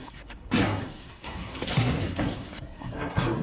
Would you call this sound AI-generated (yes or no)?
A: yes